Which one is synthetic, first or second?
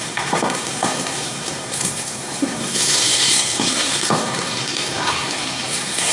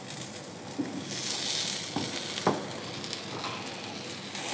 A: first